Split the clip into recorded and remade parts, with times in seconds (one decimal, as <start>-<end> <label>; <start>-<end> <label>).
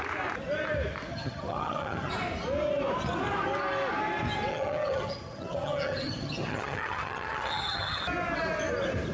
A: 0.0-1.1 recorded; 1.1-2.1 remade; 2.1-4.5 recorded; 4.5-8.0 remade; 8.0-9.1 recorded